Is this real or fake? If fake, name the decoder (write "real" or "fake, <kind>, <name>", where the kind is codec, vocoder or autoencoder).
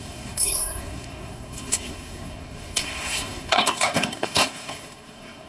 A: fake, codec, SNAC